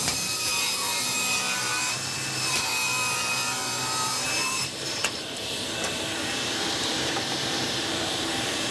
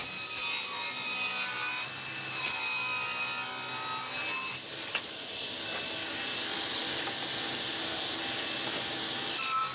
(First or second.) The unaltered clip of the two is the second